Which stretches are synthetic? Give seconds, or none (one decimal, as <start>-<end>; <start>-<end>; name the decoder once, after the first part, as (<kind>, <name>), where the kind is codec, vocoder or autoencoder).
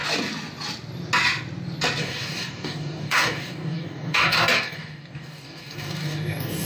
2.0-6.7 (codec, DAC)